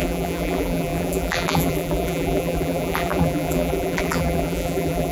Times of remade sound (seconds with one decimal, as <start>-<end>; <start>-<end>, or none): 0.0-5.1